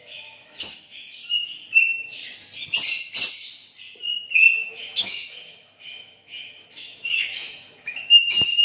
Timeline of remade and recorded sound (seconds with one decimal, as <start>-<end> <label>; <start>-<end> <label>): 0.0-1.2 remade; 1.2-1.7 recorded; 1.7-2.2 remade; 2.2-4.6 recorded; 4.6-8.6 remade